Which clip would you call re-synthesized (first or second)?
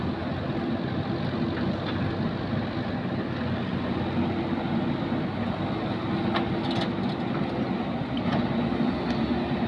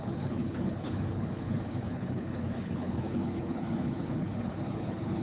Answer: second